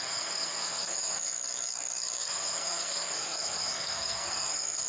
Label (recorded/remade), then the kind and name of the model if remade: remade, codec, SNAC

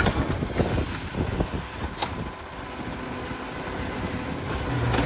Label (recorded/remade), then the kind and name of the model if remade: recorded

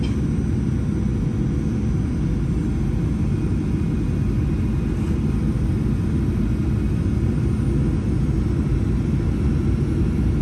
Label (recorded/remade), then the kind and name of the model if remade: recorded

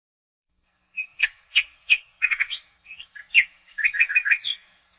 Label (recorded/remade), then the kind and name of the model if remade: remade, codec, SNAC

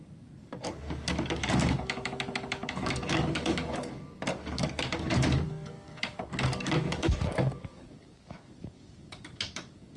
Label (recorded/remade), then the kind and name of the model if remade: remade, codec, DAC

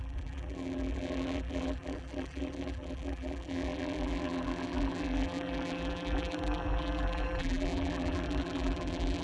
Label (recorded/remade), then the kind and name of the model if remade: remade, vocoder, BigVGAN v2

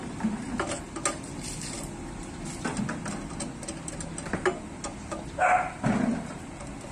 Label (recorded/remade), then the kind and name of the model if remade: recorded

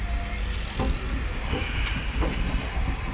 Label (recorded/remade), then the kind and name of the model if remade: recorded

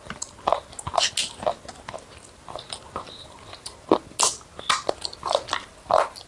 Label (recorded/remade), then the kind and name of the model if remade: recorded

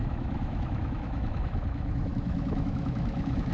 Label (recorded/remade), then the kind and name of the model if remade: remade, autoencoder, DAC-VAE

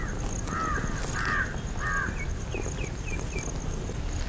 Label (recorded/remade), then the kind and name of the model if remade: recorded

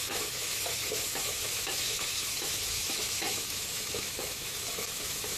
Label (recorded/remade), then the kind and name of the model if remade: remade, autoencoder, DAC-VAE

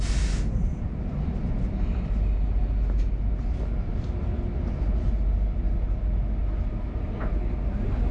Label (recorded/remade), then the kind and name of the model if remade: recorded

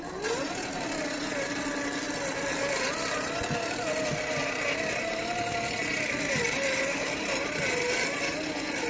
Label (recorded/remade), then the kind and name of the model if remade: recorded